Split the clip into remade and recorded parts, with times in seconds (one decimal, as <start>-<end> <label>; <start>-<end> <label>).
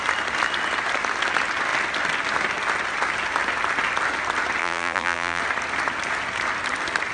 0.0-4.6 recorded; 4.6-5.4 remade; 5.4-7.1 recorded